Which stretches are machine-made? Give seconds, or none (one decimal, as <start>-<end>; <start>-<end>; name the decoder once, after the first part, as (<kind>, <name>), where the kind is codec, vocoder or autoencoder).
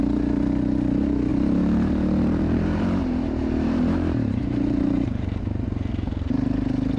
1.3-5.4 (vocoder, BigVGAN v2)